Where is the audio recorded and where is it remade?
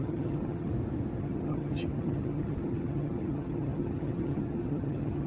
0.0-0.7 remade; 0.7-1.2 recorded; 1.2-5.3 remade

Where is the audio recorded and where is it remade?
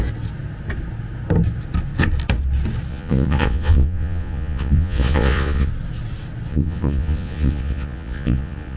0.0-2.9 recorded; 2.9-5.7 remade; 5.7-6.5 recorded; 6.5-8.8 remade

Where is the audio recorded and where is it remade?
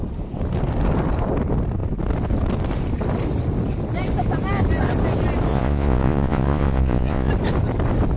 0.0-5.5 recorded; 5.5-7.3 remade; 7.3-8.2 recorded